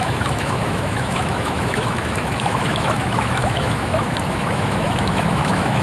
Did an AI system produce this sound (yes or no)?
yes